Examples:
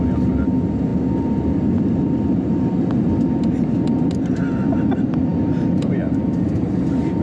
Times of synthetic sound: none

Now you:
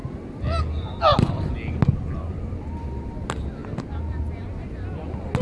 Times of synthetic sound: 0.0-0.6 (vocoder, BigVGAN v2); 1.1-3.1; 3.6-4.6

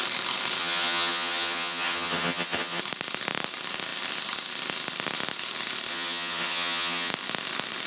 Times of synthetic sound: 0.6-2.8 (vocoder, HiFi-GAN); 5.9-7.1

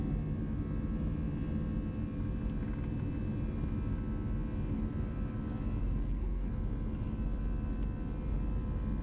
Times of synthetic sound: 5.8-6.5 (codec, SNAC)

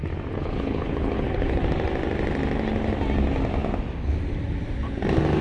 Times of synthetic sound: 0.4-1.6 (codec, HILCodec)